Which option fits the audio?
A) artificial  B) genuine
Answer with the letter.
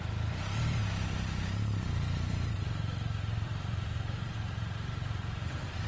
A